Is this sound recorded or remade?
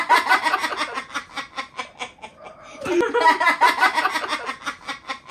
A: recorded